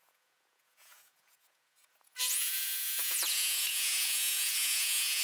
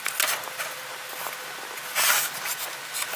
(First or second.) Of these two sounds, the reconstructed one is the first